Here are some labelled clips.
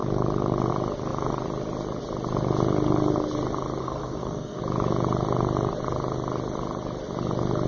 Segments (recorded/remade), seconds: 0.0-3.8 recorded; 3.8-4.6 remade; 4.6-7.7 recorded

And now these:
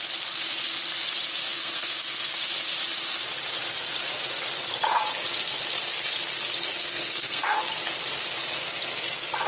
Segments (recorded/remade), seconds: 0.0-1.5 recorded; 1.5-2.3 remade; 2.3-6.8 recorded; 6.8-7.6 remade; 7.6-9.5 recorded

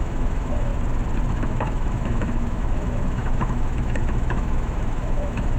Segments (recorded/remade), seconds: 0.0-0.7 remade; 0.7-1.3 recorded; 1.3-5.6 remade

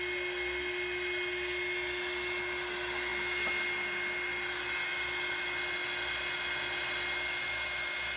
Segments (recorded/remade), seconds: 0.0-8.2 recorded

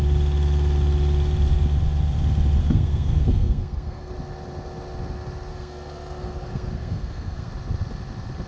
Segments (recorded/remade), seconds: 0.0-2.6 recorded; 2.6-4.1 remade; 4.1-5.5 recorded; 5.5-7.5 remade; 7.5-8.5 recorded

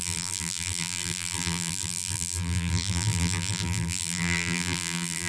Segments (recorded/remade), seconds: 0.0-5.3 remade

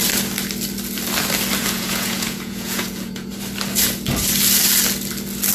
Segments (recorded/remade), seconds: 0.0-1.6 recorded; 1.6-3.3 remade; 3.3-5.5 recorded

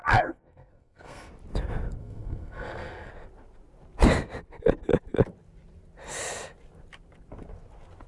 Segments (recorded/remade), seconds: 0.0-1.3 remade; 1.3-2.0 recorded; 2.0-3.1 remade; 3.1-8.1 recorded